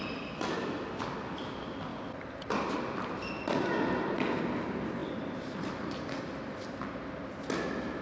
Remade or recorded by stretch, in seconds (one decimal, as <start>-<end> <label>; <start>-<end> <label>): 0.0-5.0 recorded; 5.0-6.7 remade; 6.7-8.0 recorded